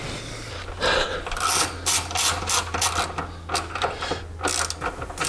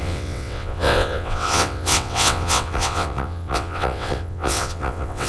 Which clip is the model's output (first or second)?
second